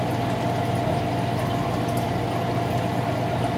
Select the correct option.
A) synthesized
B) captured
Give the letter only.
B